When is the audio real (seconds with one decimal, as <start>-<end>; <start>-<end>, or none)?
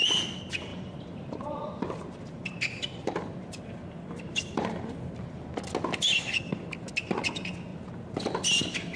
0.0-0.7; 5.1-7.7